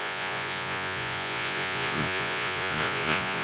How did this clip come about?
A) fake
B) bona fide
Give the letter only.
A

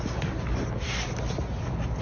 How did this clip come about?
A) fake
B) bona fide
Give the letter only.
B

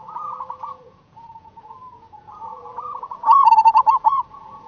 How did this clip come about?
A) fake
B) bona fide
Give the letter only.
A